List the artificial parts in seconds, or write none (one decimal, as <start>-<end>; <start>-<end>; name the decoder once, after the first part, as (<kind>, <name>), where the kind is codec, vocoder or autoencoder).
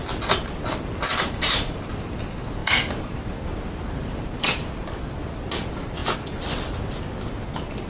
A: 1.1-1.9 (vocoder, BigVGAN v2); 2.6-4.8